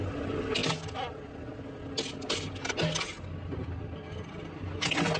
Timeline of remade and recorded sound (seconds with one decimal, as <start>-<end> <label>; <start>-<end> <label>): 0.0-5.2 recorded